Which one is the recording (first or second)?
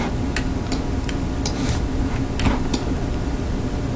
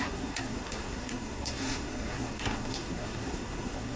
first